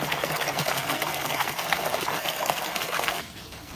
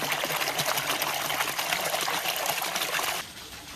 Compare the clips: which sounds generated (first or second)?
first